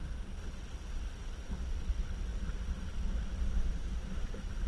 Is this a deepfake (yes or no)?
no